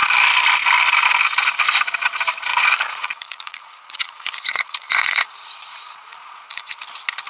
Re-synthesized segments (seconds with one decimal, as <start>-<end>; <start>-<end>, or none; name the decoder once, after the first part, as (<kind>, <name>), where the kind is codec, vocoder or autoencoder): 2.5-6.7 (vocoder, Vocos)